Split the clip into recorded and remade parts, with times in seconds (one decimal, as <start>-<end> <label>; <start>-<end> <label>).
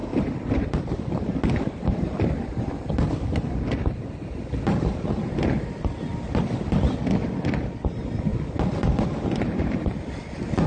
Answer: 0.0-3.1 remade; 3.1-10.7 recorded